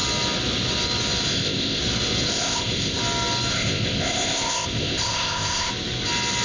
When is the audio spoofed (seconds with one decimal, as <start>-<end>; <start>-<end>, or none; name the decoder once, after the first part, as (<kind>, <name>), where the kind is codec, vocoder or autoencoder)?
1.3-1.8 (codec, ZipCodec); 2.3-3.0; 3.5-5.7